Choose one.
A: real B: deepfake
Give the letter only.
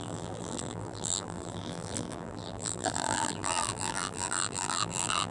B